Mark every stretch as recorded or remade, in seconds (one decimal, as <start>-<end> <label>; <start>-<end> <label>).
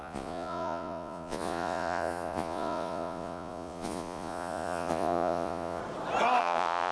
0.0-5.8 remade; 5.8-6.4 recorded; 6.4-6.9 remade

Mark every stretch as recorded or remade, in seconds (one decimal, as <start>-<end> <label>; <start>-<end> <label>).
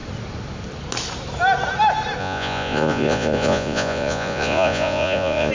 0.0-2.2 recorded; 2.2-5.5 remade